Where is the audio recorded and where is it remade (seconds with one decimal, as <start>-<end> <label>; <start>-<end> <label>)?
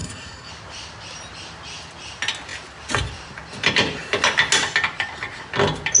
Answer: 0.0-0.5 remade; 0.5-6.0 recorded